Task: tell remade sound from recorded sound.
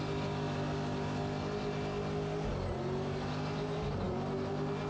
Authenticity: recorded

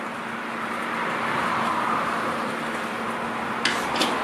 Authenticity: recorded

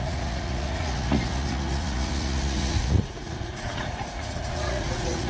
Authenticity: remade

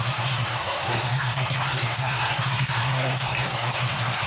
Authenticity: remade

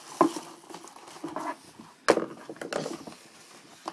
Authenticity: recorded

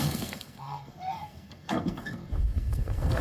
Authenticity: remade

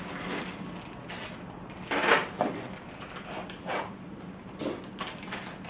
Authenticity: recorded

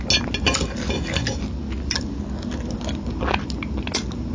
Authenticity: recorded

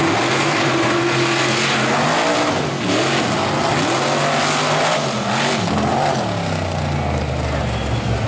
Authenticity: recorded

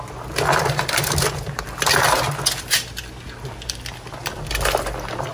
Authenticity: recorded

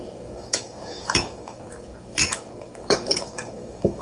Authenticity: remade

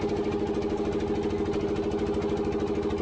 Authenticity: recorded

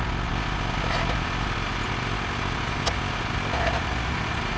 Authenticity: recorded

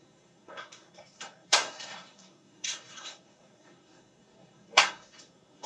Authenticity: remade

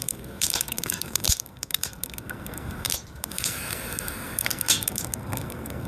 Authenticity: remade